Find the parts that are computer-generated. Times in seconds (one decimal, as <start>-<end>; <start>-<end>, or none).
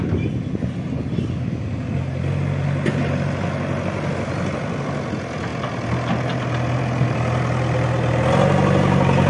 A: none